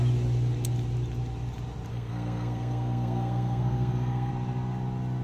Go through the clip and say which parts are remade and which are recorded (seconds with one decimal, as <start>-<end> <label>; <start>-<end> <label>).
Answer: 0.0-1.9 recorded; 1.9-4.3 remade; 4.3-5.2 recorded